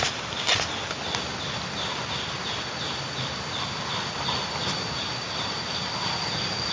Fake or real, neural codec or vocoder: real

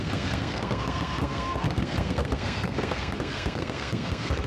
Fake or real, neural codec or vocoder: fake, codec, SNAC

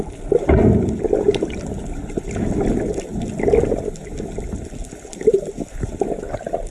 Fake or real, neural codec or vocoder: real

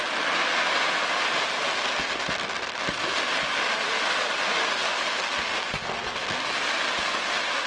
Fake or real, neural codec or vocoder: real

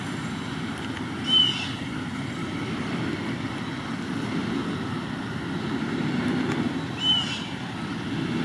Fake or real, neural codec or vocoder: real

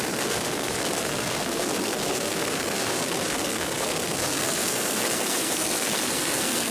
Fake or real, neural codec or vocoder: fake, codec, SNAC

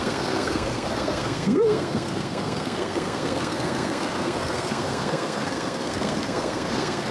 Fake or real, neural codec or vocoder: fake, codec, SNAC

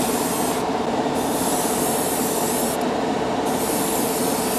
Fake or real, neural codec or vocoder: real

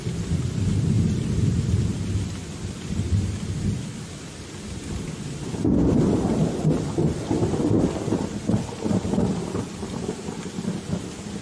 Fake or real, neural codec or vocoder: real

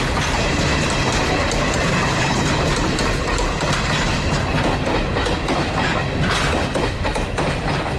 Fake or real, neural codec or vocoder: real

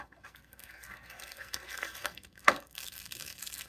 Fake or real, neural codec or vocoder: fake, codec, SNAC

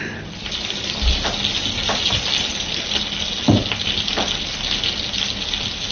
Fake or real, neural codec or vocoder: real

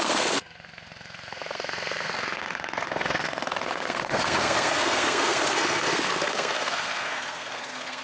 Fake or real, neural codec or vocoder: fake, codec, SNAC